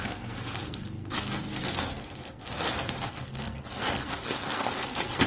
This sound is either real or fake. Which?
fake